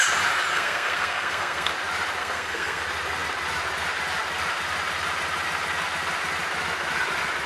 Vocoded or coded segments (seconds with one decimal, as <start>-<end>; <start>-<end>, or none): 0.5-1.7; 2.2-2.8

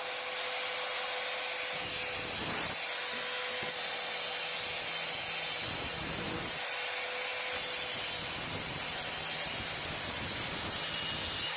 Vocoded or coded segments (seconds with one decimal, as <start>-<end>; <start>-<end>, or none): none

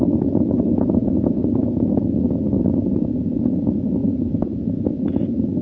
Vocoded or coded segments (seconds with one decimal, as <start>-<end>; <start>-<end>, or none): 1.0-1.7; 4.0-4.8

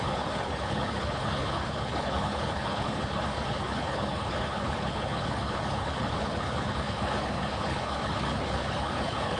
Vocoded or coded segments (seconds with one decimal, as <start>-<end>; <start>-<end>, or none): 0.0-9.4

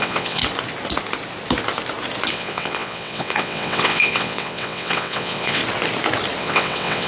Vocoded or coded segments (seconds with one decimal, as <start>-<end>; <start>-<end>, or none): 0.0-0.4; 2.3-5.6; 6.4-7.1

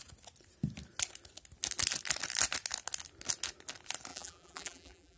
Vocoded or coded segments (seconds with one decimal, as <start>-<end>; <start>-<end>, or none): 4.1-5.2